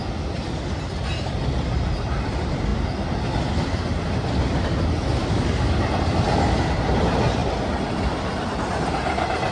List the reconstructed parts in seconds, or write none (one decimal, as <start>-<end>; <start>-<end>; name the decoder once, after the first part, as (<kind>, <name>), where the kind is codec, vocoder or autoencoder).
5.2-5.8 (codec, DAC)